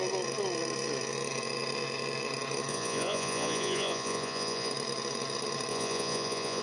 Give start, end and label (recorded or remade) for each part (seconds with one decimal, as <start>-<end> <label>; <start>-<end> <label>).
0.0-2.7 recorded; 2.7-4.7 remade; 4.7-5.7 recorded; 5.7-6.6 remade